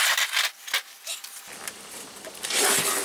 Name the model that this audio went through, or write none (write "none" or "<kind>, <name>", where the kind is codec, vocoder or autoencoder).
none